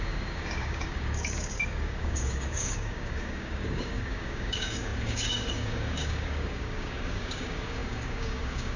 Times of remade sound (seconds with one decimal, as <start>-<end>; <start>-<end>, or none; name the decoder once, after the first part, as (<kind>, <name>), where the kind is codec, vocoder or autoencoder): 0.0-8.8 (codec, DAC)